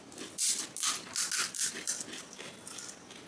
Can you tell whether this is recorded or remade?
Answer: recorded